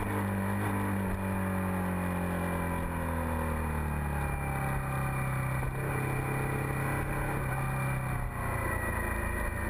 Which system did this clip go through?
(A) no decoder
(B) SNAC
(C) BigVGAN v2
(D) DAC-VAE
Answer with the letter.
A